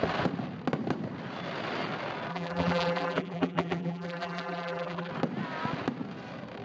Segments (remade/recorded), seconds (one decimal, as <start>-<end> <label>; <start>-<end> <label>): 0.0-2.3 recorded; 2.3-5.1 remade; 5.1-6.6 recorded